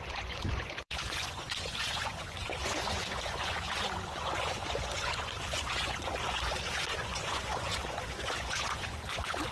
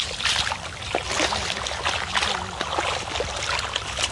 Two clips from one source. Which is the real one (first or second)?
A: second